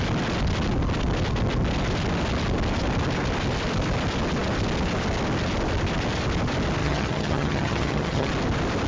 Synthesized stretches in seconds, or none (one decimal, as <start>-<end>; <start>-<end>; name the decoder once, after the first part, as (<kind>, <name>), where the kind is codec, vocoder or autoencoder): 6.8-8.3 (vocoder, HiFi-GAN)